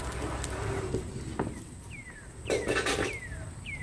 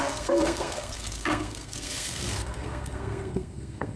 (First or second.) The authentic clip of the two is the first